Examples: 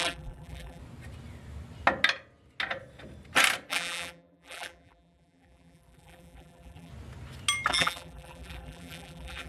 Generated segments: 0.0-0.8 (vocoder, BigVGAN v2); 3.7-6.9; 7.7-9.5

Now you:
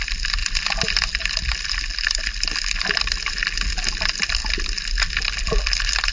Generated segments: none

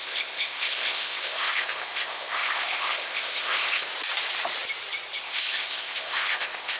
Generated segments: 0.0-3.9 (codec, ZipCodec); 5.2-6.8

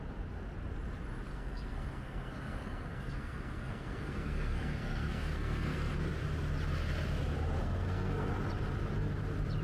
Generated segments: 1.3-6.1 (codec, SNAC); 7.6-8.3

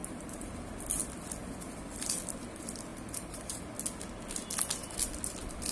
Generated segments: 0.0-0.5 (vocoder, BigVGAN v2); 2.9-3.6

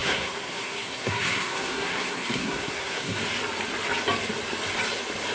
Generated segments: 0.0-3.2 (codec, SNAC)